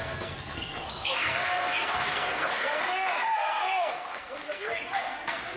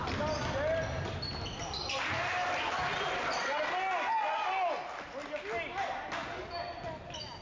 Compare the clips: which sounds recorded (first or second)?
second